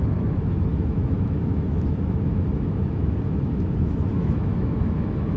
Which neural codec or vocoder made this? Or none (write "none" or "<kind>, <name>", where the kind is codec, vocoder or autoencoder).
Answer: autoencoder, DAC-VAE